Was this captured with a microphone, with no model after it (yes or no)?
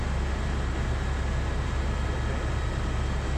yes